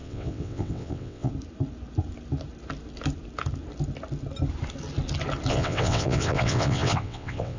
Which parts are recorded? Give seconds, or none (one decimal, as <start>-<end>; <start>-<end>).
1.3-5.5